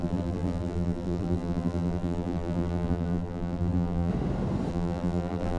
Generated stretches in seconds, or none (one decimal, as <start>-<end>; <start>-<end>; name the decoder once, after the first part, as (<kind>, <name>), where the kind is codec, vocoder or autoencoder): 0.0-4.1 (vocoder, BigVGAN v2); 4.7-5.6